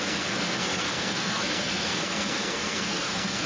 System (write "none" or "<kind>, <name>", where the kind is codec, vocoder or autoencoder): codec, SNAC